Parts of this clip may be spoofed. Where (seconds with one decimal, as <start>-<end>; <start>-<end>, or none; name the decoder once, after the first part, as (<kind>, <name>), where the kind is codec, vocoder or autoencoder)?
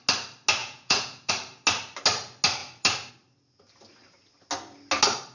0.6-1.3 (vocoder, Vocos)